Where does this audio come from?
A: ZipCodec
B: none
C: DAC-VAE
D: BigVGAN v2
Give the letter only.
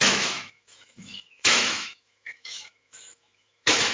C